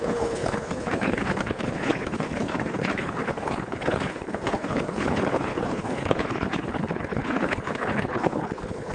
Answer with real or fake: fake